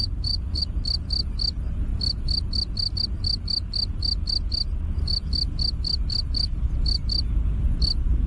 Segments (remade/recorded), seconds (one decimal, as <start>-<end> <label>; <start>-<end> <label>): 0.0-0.6 remade; 0.6-8.3 recorded